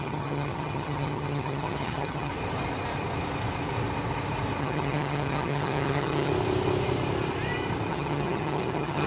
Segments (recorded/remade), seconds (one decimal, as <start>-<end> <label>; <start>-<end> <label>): 0.0-2.3 remade; 2.3-4.6 recorded; 4.6-6.3 remade; 6.3-7.9 recorded; 7.9-9.1 remade